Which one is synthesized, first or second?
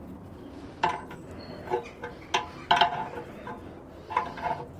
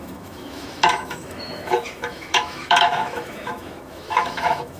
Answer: second